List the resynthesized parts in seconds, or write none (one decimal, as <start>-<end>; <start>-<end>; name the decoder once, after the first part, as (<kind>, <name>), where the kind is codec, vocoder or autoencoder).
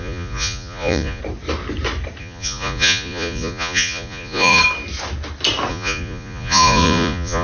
0.0-1.2 (vocoder, Vocos); 2.2-4.6; 5.7-7.4